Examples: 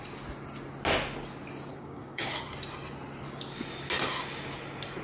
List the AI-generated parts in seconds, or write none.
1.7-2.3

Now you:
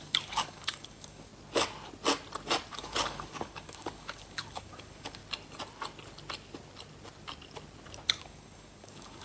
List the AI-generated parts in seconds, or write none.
0.0-1.3; 2.7-5.2; 8.2-9.2

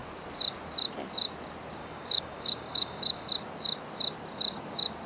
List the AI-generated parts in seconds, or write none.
1.8-3.3

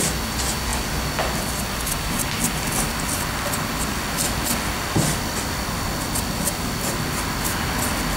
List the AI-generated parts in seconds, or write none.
none

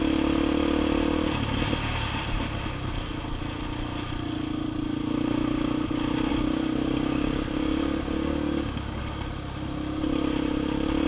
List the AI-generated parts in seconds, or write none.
6.3-9.0